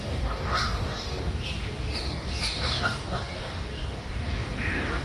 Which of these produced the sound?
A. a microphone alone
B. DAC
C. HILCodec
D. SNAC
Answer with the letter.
B